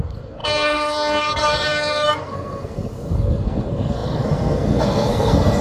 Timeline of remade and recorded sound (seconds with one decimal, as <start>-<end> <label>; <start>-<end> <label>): 0.0-5.6 remade